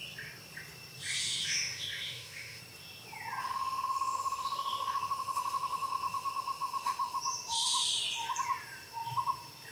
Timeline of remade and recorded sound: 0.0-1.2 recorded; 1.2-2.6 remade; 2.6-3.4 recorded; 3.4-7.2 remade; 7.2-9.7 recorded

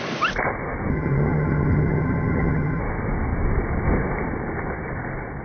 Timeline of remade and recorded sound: 0.0-0.9 recorded; 0.9-2.8 remade; 2.8-5.4 recorded

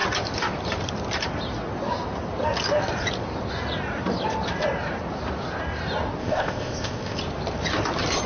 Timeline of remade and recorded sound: 0.0-6.2 recorded; 6.2-7.2 remade; 7.2-8.3 recorded